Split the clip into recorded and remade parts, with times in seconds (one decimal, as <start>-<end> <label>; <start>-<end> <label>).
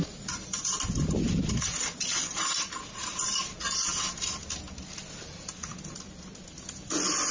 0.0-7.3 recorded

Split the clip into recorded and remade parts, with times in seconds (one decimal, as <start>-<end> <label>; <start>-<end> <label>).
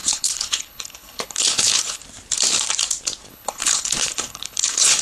0.0-2.0 remade; 2.0-3.3 recorded; 3.3-5.0 remade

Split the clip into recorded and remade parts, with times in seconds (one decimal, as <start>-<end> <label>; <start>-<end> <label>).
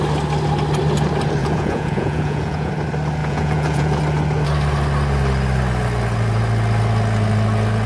0.0-1.4 recorded; 1.4-2.7 remade; 2.7-3.2 recorded; 3.2-4.0 remade; 4.0-7.9 recorded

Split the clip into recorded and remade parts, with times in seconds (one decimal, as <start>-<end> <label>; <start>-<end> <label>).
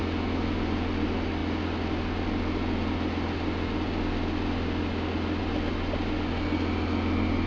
0.0-7.5 recorded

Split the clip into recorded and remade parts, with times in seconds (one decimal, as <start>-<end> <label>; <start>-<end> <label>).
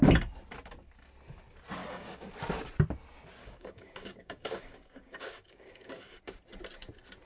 0.0-1.8 recorded; 1.8-2.3 remade; 2.3-3.4 recorded; 3.4-6.2 remade; 6.2-7.3 recorded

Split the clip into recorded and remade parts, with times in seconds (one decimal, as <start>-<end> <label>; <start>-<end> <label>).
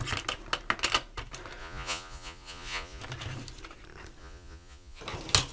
0.0-1.6 recorded; 1.6-3.0 remade; 3.0-4.2 recorded; 4.2-5.0 remade; 5.0-5.5 recorded